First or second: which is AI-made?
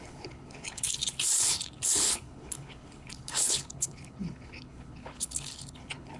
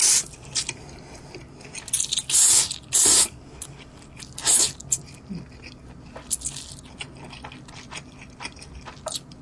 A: first